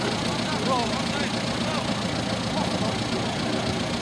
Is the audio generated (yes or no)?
no